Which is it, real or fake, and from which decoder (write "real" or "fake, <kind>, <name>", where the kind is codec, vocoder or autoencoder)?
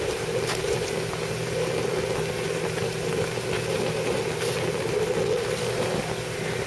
real